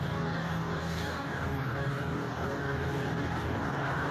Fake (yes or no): yes